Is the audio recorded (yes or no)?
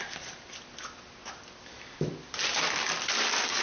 yes